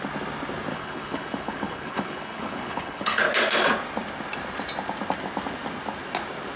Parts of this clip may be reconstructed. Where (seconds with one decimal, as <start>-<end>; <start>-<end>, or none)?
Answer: 0.7-3.2